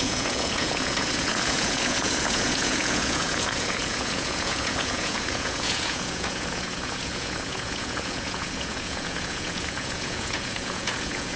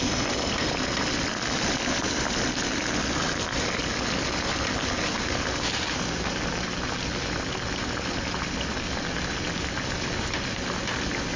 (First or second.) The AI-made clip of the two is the first